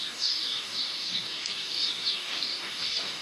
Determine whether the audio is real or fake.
fake